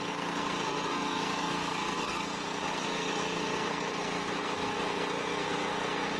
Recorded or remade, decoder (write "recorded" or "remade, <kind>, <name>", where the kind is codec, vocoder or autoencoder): remade, codec, SNAC